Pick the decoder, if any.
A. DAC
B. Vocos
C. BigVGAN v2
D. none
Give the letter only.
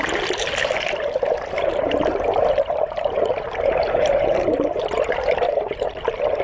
C